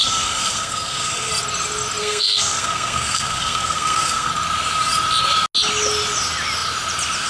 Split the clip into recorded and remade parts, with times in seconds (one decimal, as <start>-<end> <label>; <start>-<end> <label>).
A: 0.0-1.3 remade; 1.3-2.0 recorded; 2.0-4.3 remade; 4.3-7.3 recorded